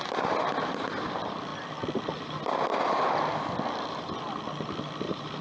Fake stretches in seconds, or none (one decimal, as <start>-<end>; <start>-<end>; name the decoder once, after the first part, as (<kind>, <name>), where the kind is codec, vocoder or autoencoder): none